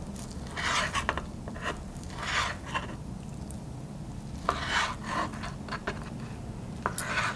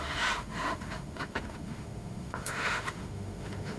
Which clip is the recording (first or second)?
first